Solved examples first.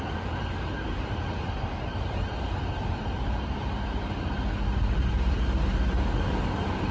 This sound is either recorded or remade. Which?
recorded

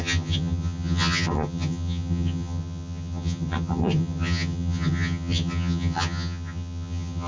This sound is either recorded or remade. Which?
remade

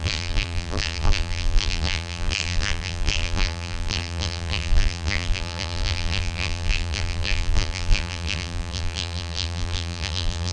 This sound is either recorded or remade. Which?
remade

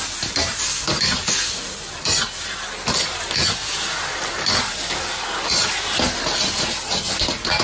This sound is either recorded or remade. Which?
recorded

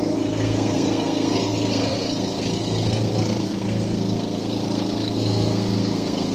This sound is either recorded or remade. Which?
remade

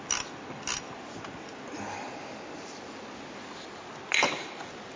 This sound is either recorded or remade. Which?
recorded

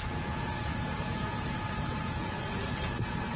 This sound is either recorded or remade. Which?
remade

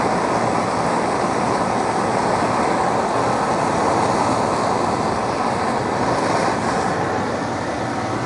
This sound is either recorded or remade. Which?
recorded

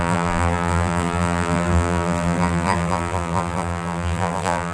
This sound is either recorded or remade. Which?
remade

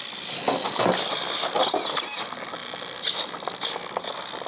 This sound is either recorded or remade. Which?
recorded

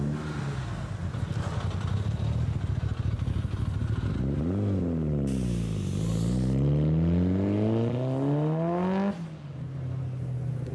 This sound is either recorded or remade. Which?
recorded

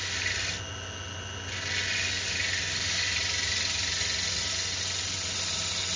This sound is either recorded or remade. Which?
recorded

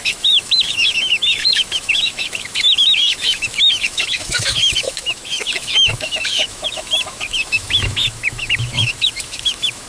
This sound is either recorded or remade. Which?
remade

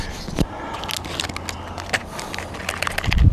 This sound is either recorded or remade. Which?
recorded